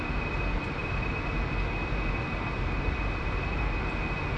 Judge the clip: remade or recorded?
recorded